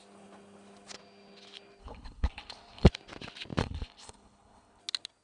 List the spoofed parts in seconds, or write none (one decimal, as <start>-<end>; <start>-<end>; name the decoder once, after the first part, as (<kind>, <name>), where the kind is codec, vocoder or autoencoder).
1.8-2.9 (codec, HILCodec); 3.6-4.8